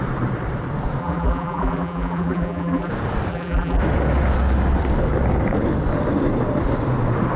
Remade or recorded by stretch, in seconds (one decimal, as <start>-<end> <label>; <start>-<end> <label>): 0.0-1.0 recorded; 1.0-2.9 remade; 2.9-3.3 recorded; 3.3-3.8 remade; 3.8-7.4 recorded